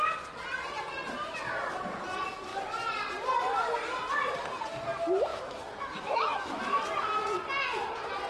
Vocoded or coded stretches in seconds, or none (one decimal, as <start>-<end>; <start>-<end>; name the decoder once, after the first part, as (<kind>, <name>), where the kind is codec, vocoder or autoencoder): 5.3-6.6 (autoencoder, DAC-VAE)